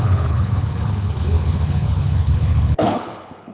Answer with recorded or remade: remade